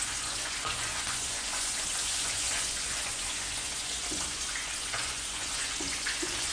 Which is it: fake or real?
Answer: fake